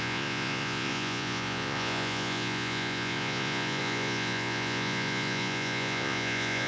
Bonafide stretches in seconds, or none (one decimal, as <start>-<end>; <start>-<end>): none